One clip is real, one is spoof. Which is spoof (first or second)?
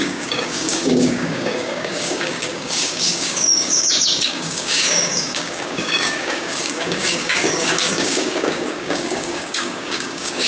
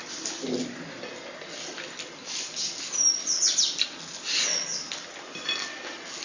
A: first